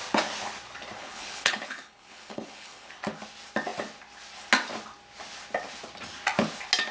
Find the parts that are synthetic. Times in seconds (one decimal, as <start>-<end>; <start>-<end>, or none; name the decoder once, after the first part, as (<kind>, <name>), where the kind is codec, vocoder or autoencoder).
1.0-2.9 (codec, HILCodec)